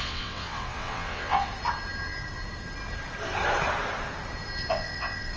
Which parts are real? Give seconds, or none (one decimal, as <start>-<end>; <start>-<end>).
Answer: 1.5-4.7